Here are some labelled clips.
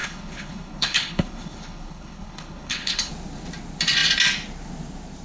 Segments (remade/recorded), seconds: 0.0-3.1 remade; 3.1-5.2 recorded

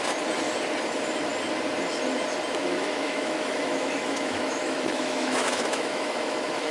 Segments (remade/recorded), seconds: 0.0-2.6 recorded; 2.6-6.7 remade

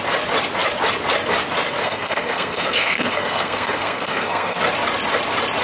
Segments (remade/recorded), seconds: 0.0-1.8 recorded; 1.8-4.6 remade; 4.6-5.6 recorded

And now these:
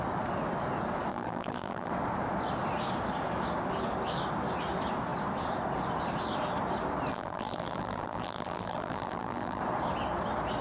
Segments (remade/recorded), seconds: 0.0-1.1 recorded; 1.1-1.9 remade; 1.9-7.1 recorded; 7.1-9.6 remade; 9.6-10.6 recorded

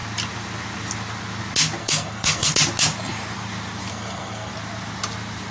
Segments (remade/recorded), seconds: 0.0-1.8 recorded; 1.8-2.5 remade; 2.5-3.9 recorded; 3.9-4.5 remade; 4.5-5.5 recorded

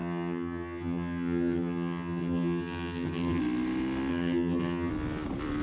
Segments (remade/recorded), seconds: 0.0-3.4 remade; 3.4-4.1 recorded; 4.1-4.9 remade; 4.9-5.6 recorded